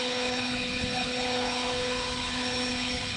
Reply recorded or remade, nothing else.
remade